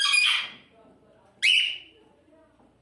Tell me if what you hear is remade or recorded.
recorded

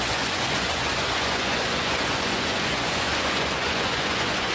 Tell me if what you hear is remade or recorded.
remade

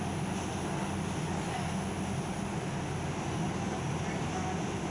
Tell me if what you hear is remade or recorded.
recorded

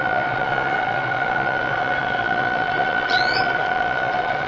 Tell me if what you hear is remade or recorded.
remade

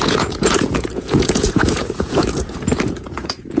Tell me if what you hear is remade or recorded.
remade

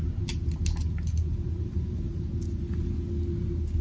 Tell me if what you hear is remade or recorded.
recorded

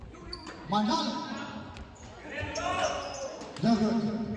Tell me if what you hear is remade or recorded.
remade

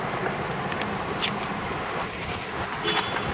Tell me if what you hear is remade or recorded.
recorded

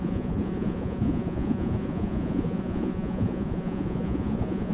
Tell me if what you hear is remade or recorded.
remade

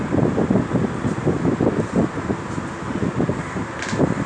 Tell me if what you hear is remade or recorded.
recorded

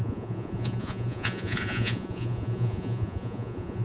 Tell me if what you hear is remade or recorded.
remade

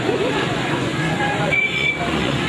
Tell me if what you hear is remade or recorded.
remade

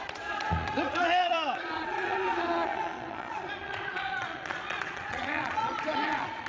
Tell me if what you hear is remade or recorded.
remade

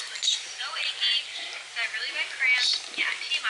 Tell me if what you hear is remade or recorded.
recorded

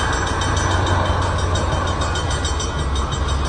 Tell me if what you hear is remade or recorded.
recorded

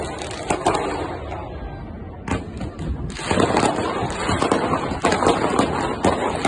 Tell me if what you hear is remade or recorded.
recorded